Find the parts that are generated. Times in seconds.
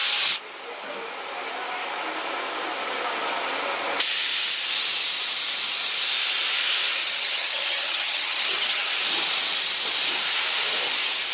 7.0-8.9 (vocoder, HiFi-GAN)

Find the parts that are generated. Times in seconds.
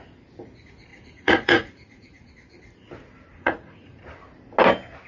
0.9-2.3 (vocoder, Vocos); 3.3-4.0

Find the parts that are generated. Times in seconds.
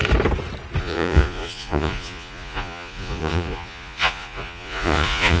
0.8-5.4 (vocoder, Vocos)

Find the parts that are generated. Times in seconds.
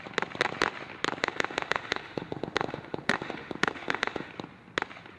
1.2-4.3 (autoencoder, DAC-VAE)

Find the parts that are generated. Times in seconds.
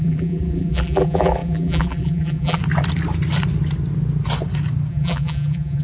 0.0-2.6 (vocoder, BigVGAN v2); 4.9-5.8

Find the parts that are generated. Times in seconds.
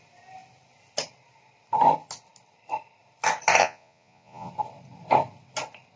3.6-4.5 (vocoder, Vocos)